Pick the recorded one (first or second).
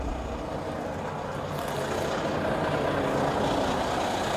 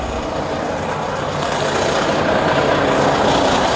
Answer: first